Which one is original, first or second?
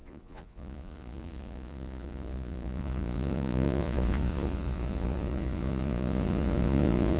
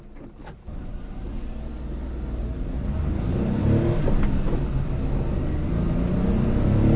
second